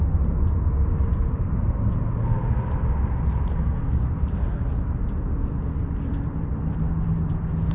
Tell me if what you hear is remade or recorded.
recorded